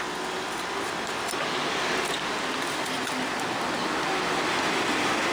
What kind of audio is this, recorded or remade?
recorded